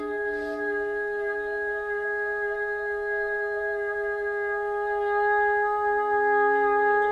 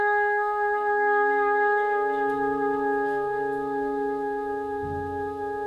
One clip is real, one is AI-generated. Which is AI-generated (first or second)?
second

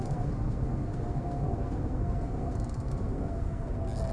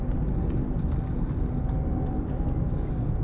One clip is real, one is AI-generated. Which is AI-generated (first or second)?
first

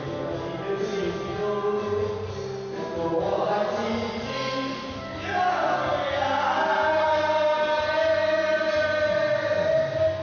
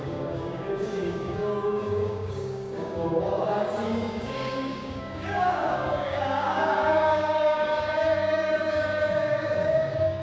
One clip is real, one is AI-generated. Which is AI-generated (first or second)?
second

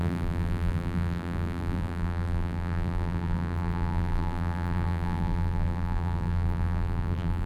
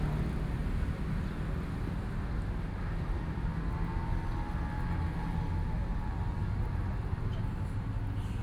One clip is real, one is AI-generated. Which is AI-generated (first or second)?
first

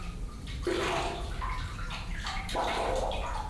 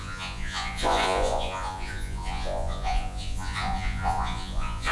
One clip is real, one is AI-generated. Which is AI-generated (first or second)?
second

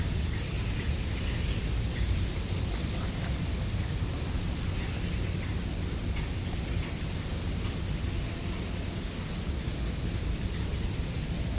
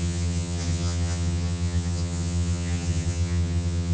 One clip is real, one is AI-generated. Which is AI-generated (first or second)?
second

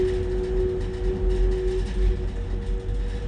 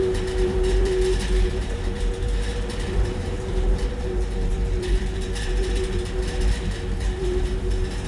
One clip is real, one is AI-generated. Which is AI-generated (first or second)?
second